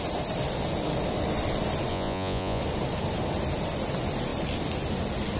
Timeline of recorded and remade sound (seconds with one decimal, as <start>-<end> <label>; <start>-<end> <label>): 0.0-1.9 recorded; 1.9-2.6 remade; 2.6-5.4 recorded